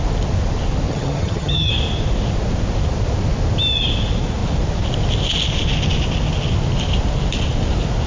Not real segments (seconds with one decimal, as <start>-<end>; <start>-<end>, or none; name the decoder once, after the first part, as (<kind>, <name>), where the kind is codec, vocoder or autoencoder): 0.9-1.7 (vocoder, HiFi-GAN)